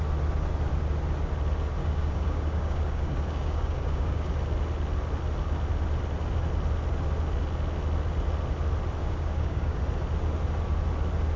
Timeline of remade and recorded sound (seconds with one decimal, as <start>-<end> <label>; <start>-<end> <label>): 0.0-1.8 recorded; 1.8-4.3 remade; 4.3-9.0 recorded; 9.0-9.8 remade; 9.8-11.4 recorded